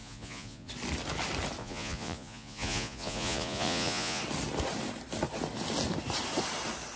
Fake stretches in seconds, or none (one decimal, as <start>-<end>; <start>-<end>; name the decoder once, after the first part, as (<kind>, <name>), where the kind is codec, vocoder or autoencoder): 0.0-0.7 (vocoder, Vocos); 1.6-4.2